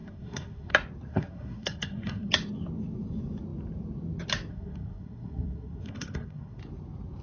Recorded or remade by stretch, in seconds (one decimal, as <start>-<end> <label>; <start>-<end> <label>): 0.0-0.7 remade; 0.7-1.1 recorded; 1.1-2.3 remade; 2.3-4.5 recorded; 4.5-6.6 remade; 6.6-7.2 recorded